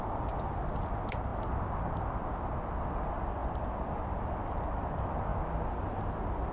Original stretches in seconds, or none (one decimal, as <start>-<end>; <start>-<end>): 0.0-6.5